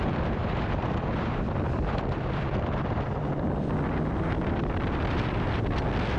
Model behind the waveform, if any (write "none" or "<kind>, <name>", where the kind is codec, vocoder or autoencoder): vocoder, BigVGAN v2